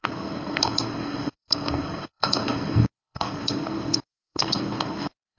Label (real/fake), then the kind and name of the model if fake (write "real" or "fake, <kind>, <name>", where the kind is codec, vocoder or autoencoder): fake, codec, SNAC